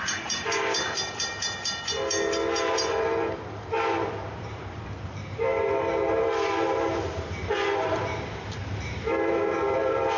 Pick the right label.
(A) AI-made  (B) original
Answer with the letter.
A